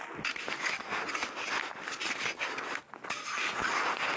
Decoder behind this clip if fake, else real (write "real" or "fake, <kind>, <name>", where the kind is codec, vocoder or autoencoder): real